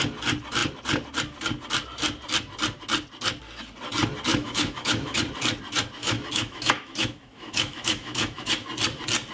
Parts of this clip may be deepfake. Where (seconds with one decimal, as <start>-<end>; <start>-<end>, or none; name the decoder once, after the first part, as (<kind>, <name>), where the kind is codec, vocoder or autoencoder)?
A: 4.3-5.2 (autoencoder, DAC-VAE); 6.0-8.5